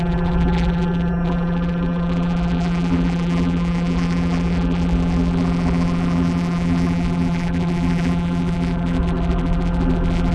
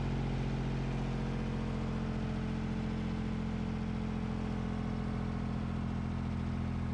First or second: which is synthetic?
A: first